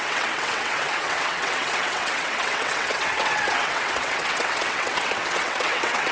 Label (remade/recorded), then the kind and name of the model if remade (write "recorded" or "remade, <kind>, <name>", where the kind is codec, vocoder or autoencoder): remade, vocoder, WaveNeXt